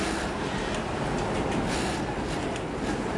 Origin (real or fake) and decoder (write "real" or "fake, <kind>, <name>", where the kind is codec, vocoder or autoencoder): real